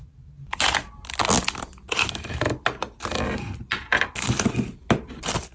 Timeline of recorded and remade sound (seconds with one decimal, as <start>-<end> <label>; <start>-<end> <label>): 0.0-5.5 recorded